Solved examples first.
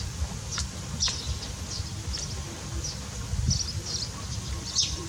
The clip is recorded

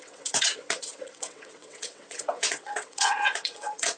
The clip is remade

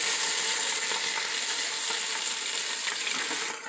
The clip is recorded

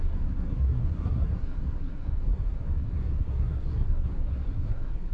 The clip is remade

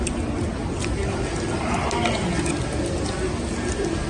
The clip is recorded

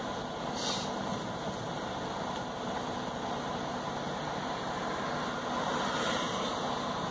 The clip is recorded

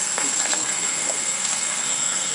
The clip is remade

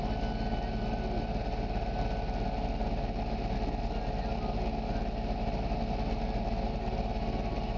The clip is recorded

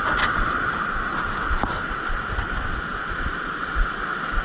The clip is recorded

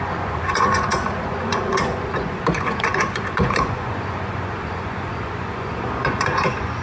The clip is remade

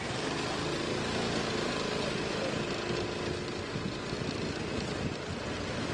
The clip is recorded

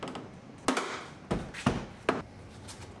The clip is recorded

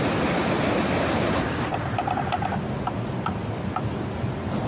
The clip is recorded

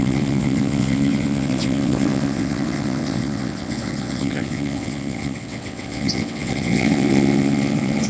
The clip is remade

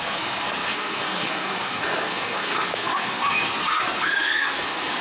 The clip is remade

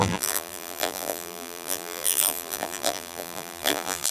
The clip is remade